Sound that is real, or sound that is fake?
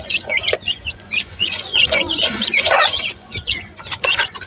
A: fake